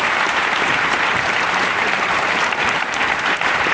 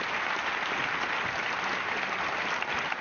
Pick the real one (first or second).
second